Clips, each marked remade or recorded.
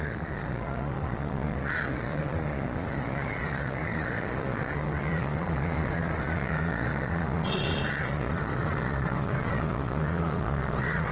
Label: remade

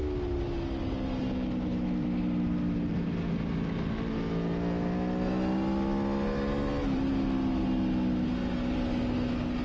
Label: recorded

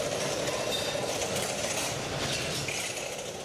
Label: recorded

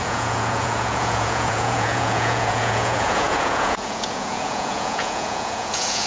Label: remade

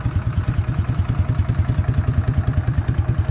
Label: recorded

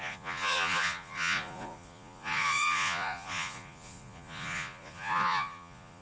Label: remade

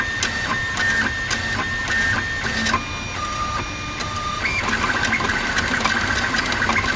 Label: recorded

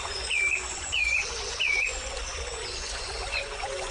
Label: remade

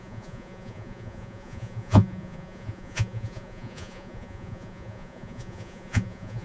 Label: remade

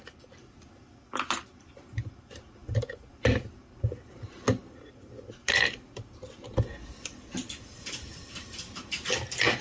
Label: recorded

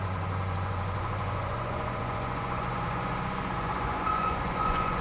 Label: remade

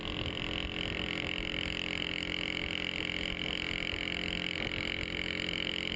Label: recorded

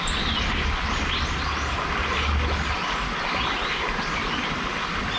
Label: recorded